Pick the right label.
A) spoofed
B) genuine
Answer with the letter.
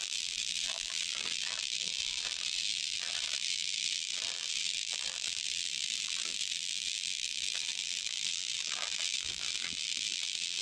A